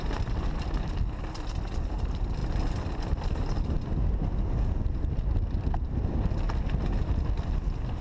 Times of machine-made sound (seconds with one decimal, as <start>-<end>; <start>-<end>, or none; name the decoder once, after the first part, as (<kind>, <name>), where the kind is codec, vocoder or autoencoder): none